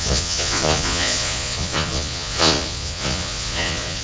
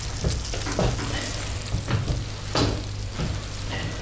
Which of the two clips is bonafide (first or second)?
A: second